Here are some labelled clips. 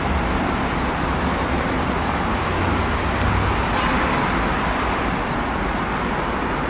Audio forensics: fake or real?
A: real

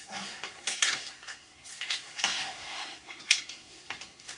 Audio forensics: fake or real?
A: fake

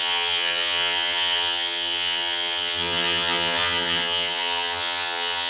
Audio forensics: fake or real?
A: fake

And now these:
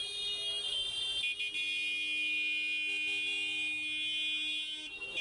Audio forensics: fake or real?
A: real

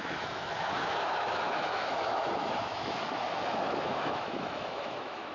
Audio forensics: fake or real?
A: fake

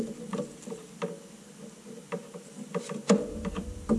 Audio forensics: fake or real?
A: real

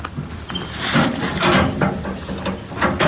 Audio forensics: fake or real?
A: real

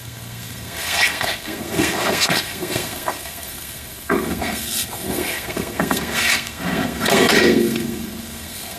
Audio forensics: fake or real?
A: fake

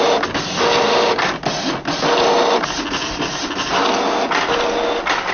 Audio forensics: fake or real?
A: real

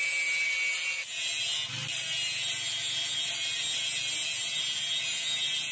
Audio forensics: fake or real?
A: real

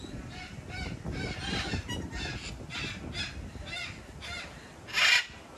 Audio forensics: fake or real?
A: real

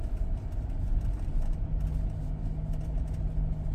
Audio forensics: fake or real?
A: real